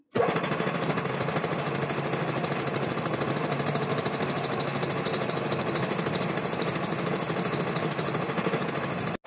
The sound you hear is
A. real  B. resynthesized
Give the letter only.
A